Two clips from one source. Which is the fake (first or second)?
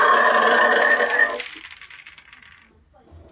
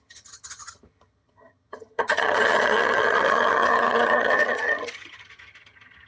second